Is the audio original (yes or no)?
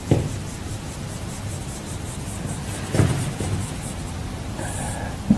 no